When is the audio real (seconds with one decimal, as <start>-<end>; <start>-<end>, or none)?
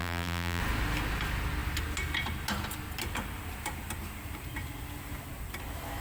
0.6-6.0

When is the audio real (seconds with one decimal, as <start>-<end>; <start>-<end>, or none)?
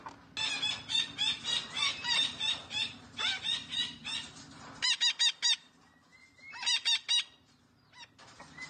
0.0-1.9; 3.0-4.0; 5.0-8.7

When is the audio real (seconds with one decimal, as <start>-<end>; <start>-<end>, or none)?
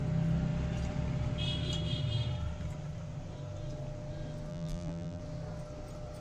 0.0-4.5; 5.2-6.2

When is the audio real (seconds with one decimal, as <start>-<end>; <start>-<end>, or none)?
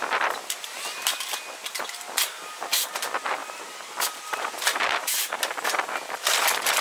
0.0-3.4; 6.3-6.8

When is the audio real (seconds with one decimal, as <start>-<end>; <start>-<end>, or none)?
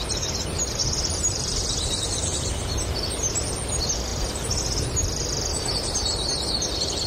0.0-0.8; 2.5-7.1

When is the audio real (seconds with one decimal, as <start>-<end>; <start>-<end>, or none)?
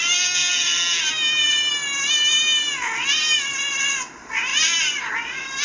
0.0-5.6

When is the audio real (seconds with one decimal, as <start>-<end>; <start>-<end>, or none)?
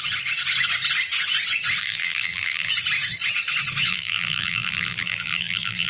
0.0-1.8; 2.7-3.9